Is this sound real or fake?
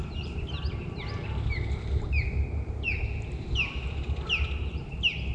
real